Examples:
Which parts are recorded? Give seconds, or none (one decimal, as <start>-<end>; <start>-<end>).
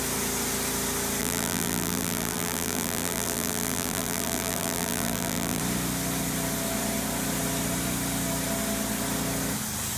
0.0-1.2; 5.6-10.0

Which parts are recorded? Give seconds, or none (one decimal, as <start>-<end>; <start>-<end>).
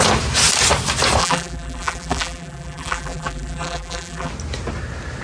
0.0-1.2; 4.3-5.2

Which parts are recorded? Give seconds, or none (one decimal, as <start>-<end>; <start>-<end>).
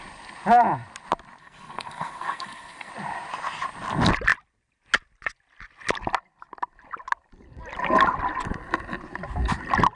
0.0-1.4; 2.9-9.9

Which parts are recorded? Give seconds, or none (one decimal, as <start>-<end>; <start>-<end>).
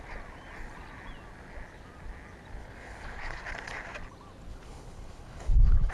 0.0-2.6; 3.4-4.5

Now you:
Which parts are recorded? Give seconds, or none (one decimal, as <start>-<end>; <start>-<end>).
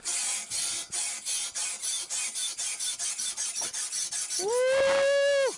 0.0-5.6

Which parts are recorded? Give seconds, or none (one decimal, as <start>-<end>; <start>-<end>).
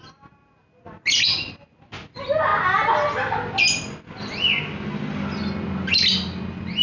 0.0-6.8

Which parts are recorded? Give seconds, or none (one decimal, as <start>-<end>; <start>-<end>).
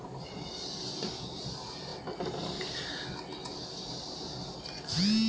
0.0-5.3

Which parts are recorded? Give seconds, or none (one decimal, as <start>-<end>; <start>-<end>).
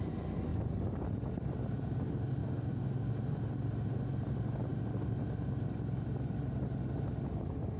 0.0-2.4; 3.1-7.8